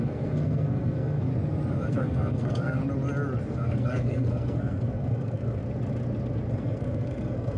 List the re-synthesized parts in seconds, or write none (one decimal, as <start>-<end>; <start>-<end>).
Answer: 0.0-1.3; 1.9-2.8; 3.5-5.6; 6.5-7.6